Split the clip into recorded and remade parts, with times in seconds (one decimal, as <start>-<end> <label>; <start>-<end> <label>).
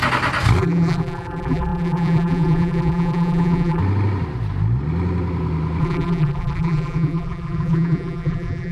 0.0-0.6 recorded; 0.6-3.8 remade; 3.8-5.8 recorded; 5.8-8.7 remade